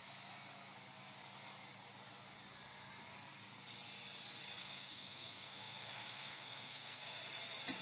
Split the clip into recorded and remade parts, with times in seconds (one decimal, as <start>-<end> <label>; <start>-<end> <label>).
0.0-4.6 recorded; 4.6-7.2 remade; 7.2-7.8 recorded